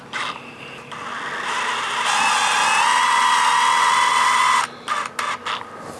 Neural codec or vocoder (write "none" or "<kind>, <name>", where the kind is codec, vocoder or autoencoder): none